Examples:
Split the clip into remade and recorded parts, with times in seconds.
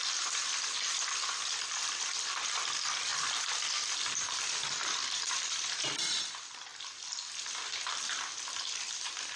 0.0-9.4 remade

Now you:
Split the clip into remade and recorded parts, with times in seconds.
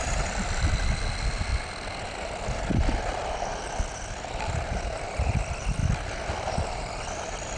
0.0-1.5 remade; 1.5-3.8 recorded; 3.8-5.8 remade; 5.8-6.3 recorded; 6.3-7.6 remade